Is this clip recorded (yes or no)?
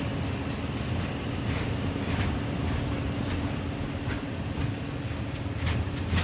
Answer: yes